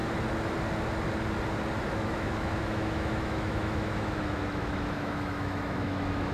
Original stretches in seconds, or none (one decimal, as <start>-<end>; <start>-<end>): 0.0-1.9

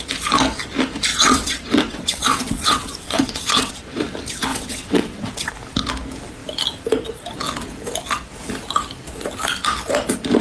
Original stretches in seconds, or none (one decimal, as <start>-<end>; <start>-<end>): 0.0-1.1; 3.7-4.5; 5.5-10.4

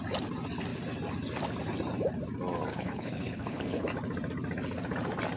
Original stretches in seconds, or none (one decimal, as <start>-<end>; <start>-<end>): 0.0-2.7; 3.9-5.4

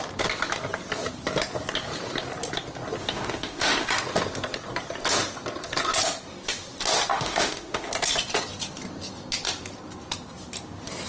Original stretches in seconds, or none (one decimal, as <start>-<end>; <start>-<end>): 0.0-3.0; 3.9-7.1; 7.9-11.1

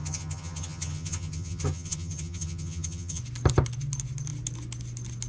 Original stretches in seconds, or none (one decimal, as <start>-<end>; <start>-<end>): 3.2-5.3

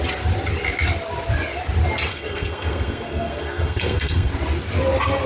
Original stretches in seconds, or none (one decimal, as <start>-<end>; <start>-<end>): 0.0-2.1; 4.3-5.3

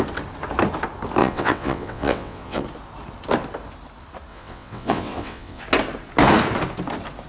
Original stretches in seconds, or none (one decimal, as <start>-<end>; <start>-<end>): 0.0-1.2; 2.6-4.3; 5.6-7.3

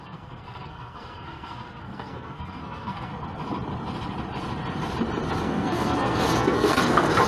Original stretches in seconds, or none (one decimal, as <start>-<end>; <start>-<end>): 3.1-5.4